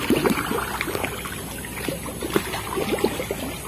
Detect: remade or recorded recorded